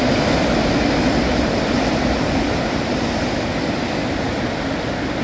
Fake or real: real